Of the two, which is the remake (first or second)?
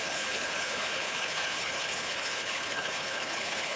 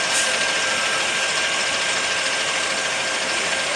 first